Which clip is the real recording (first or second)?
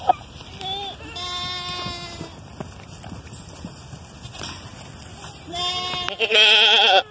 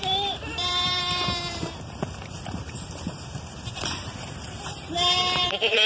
first